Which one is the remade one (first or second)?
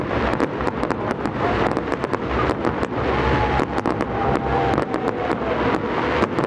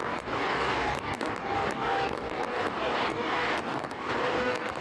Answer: second